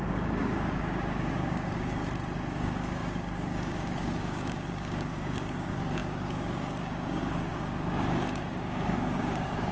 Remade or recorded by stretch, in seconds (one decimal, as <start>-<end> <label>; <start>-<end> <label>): 0.0-2.0 remade; 2.0-2.5 recorded; 2.5-9.7 remade

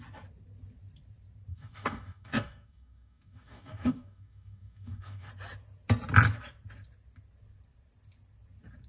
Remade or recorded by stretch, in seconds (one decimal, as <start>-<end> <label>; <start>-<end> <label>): 0.0-1.5 recorded; 1.5-5.3 remade; 5.3-8.9 recorded

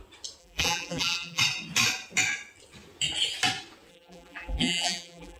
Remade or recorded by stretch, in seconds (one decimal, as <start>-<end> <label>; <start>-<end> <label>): 0.0-0.4 recorded; 0.4-1.4 remade; 1.4-3.9 recorded; 3.9-5.4 remade

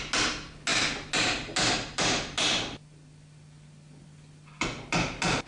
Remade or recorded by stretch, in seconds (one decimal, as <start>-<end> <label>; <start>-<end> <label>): 0.0-5.5 recorded

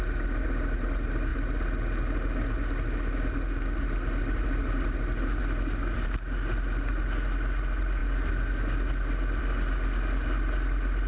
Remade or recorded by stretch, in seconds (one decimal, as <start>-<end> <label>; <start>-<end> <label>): 0.0-11.1 recorded

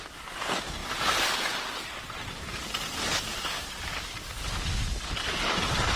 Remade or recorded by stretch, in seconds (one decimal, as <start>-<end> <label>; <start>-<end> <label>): 0.0-6.0 recorded

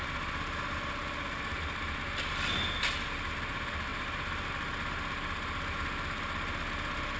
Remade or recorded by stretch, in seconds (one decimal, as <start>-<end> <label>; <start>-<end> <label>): 0.0-7.2 recorded